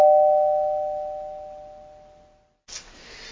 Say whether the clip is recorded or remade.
recorded